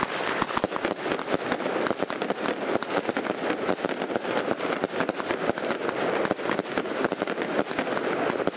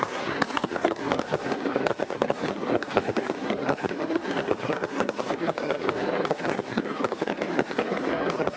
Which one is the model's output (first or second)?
second